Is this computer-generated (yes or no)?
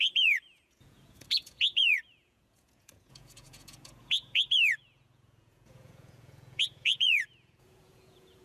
yes